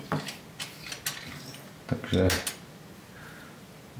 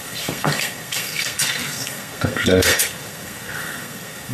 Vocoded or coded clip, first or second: second